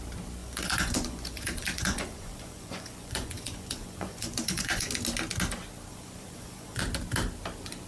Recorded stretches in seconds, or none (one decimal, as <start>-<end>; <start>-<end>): 0.0-0.4; 4.9-5.9; 6.8-7.9